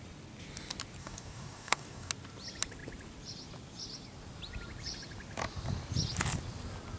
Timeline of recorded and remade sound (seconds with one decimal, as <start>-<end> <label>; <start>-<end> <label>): 0.0-1.0 recorded; 1.0-2.1 remade; 2.1-7.0 recorded